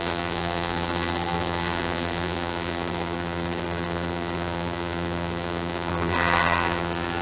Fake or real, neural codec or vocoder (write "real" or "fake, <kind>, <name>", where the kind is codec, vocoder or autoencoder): fake, vocoder, BigVGAN v2